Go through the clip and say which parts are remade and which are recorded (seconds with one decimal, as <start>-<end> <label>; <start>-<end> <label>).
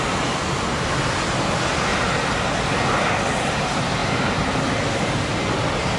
0.0-4.0 recorded; 4.0-5.0 remade; 5.0-6.0 recorded